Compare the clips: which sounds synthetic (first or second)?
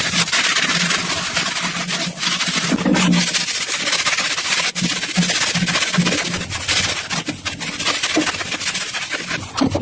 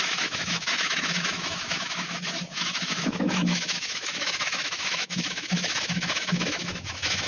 second